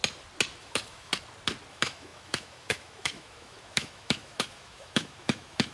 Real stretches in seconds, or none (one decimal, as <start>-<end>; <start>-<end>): 0.0-0.6; 1.1-1.7